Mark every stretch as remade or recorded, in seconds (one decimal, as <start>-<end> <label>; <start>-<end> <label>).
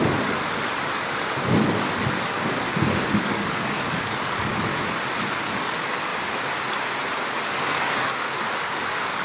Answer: 0.0-4.7 remade; 4.7-5.4 recorded; 5.4-6.1 remade; 6.1-7.3 recorded; 7.3-9.2 remade